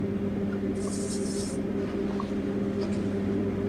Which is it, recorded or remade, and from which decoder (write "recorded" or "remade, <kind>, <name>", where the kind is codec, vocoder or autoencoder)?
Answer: recorded